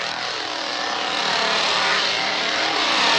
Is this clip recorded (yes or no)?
yes